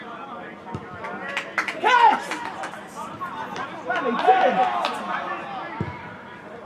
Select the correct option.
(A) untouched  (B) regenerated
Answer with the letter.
A